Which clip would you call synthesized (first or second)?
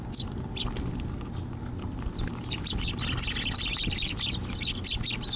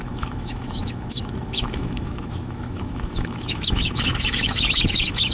second